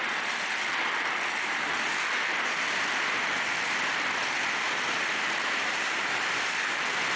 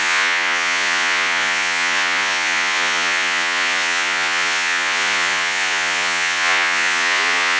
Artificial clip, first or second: second